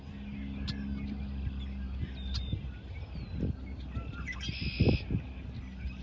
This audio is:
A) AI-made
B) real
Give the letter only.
B